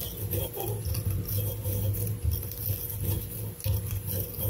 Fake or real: real